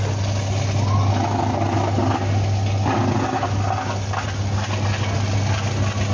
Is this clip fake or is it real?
real